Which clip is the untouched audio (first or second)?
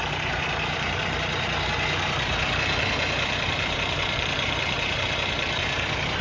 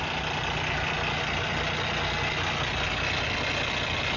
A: second